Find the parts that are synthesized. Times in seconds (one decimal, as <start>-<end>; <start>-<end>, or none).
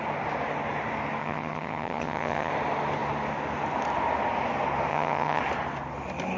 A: 1.2-2.5; 4.9-5.4